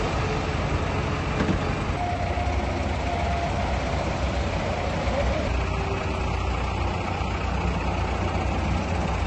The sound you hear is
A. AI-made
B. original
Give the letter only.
B